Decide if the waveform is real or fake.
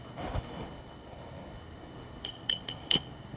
fake